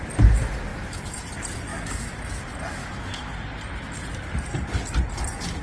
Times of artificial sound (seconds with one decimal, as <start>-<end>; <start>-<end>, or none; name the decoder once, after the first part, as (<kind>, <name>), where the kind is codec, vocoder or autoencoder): 0.7-1.2 (autoencoder, DAC-VAE); 1.7-2.4; 2.8-3.3